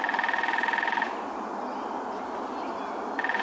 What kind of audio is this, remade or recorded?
recorded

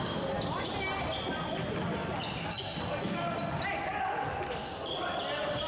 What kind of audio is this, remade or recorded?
recorded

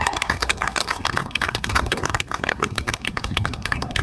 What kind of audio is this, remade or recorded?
remade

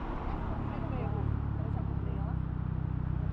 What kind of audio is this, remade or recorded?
recorded